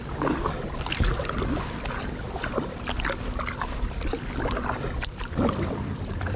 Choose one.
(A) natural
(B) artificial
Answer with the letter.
A